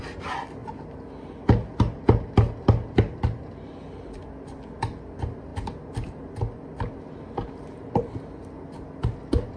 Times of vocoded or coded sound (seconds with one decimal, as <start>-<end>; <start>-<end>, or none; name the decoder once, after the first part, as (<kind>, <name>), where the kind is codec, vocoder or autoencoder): none

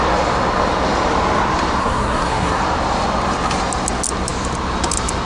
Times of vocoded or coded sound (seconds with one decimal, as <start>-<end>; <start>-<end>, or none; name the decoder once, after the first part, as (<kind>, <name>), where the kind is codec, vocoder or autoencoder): 1.8-2.6 (codec, SNAC)

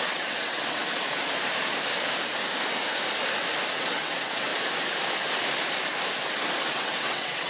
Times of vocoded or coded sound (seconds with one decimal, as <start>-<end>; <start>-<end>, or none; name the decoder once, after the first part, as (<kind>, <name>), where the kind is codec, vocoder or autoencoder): 0.0-0.8 (vocoder, WaveNeXt); 3.7-4.5; 6.7-7.5

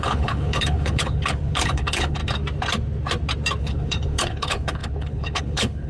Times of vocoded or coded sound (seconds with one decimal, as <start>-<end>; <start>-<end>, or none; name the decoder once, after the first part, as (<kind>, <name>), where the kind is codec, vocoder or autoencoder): 0.0-2.2 (codec, HILCodec); 3.6-5.9